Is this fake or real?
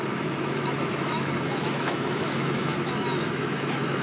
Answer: fake